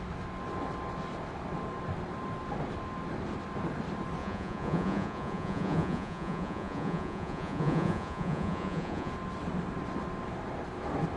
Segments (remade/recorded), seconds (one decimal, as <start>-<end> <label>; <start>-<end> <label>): 0.0-4.2 recorded; 4.2-9.1 remade; 9.1-11.2 recorded